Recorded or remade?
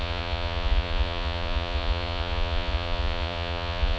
remade